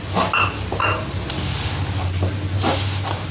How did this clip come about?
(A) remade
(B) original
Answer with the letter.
B